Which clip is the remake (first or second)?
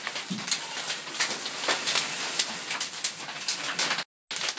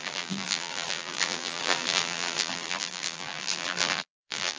second